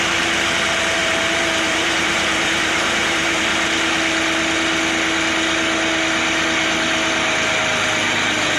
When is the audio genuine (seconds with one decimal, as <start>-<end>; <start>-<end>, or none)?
0.0-1.0; 3.4-8.6